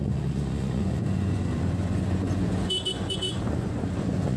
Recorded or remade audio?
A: remade